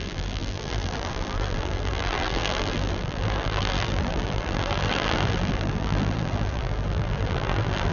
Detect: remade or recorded remade